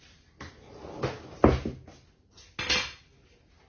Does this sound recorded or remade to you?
recorded